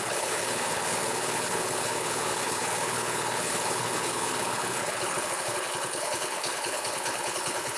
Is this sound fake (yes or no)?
yes